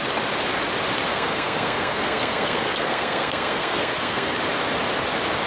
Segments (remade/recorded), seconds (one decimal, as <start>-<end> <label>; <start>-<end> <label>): 0.0-1.1 recorded; 1.1-4.4 remade; 4.4-5.5 recorded